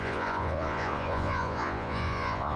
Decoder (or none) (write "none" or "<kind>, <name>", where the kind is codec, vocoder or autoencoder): vocoder, Vocos